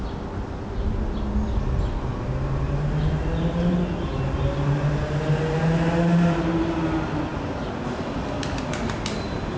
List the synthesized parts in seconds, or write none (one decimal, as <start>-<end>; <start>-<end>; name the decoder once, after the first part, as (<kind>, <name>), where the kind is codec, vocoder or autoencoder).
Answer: none